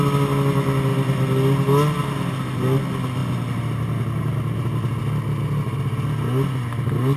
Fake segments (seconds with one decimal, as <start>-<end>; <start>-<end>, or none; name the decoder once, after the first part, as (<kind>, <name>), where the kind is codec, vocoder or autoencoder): none

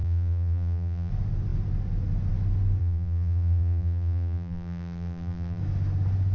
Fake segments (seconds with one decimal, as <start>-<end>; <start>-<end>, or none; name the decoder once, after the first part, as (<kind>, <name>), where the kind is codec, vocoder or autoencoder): 0.0-1.1 (vocoder, BigVGAN v2); 2.8-5.6